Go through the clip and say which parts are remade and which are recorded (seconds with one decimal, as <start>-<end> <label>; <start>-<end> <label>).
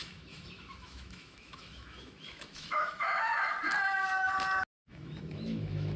0.0-3.3 remade; 3.3-4.8 recorded; 4.8-6.0 remade